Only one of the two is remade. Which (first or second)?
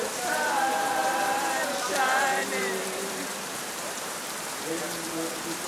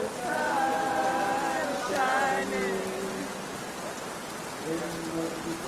first